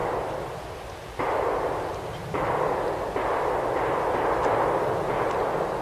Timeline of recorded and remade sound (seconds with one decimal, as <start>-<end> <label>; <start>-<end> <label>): 0.0-5.8 recorded